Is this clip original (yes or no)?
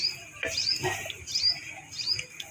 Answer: yes